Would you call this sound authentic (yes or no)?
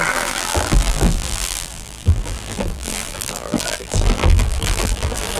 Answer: no